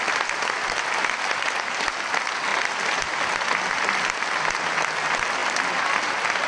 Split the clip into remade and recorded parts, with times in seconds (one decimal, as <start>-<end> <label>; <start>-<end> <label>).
0.0-6.5 recorded